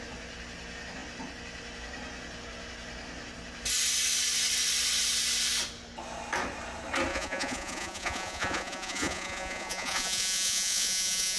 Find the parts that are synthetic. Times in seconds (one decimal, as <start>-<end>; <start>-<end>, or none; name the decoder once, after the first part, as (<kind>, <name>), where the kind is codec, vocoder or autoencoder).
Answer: 7.1-11.4 (vocoder, Vocos)